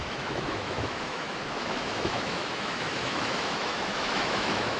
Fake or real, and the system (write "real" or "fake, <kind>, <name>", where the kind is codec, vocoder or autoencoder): fake, autoencoder, DAC-VAE